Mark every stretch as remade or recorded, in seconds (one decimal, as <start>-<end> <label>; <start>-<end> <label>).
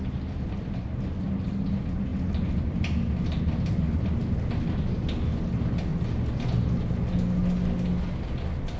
0.0-8.8 recorded